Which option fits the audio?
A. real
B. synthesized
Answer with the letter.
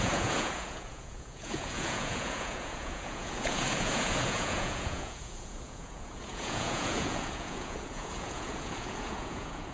B